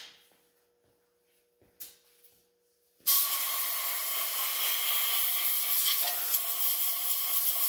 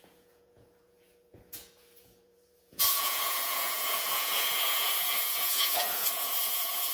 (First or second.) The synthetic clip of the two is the second